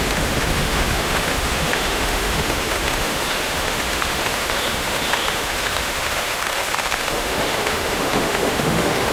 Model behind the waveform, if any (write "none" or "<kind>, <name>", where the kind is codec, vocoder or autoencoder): autoencoder, DAC-VAE